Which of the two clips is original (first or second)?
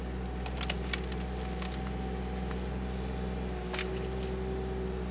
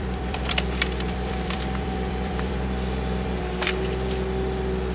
first